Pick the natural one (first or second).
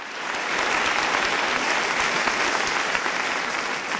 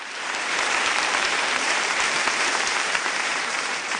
first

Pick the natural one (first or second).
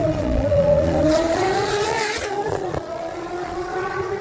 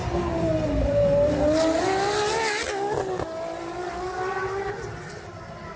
second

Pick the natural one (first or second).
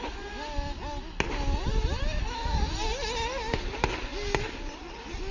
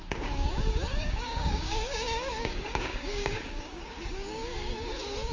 first